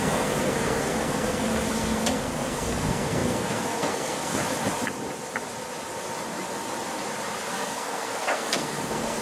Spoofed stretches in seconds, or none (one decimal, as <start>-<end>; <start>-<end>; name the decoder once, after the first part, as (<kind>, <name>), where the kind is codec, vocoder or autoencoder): 0.0-4.4 (codec, SNAC); 7.5-9.2